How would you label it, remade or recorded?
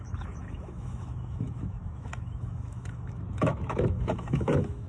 remade